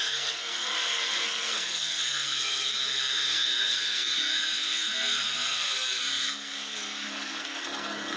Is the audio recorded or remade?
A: remade